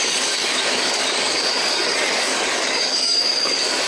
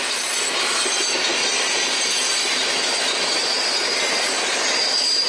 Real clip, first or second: second